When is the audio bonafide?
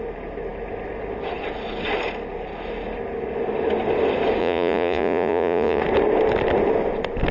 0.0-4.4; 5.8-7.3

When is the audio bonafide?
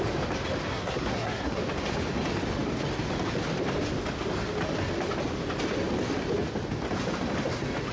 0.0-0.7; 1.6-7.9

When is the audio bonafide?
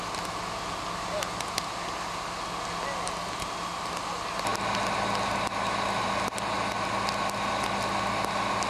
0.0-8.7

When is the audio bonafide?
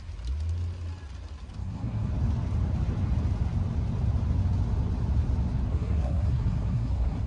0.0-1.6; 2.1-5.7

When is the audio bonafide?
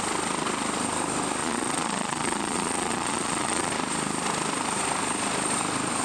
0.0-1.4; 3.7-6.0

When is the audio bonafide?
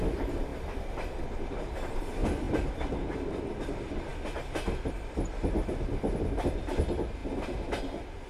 0.0-0.5; 1.2-2.2; 3.4-8.3